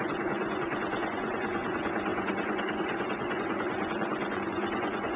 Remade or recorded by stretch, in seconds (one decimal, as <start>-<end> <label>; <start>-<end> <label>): 0.0-5.2 remade